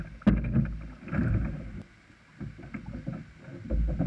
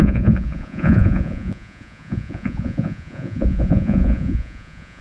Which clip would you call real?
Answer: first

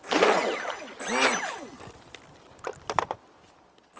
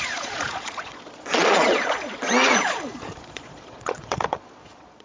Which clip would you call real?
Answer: first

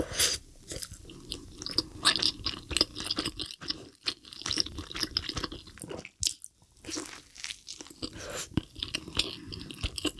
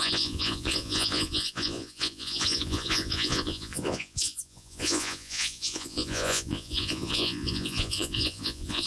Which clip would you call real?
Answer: first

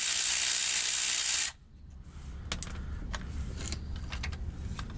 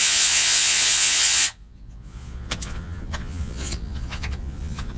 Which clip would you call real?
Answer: first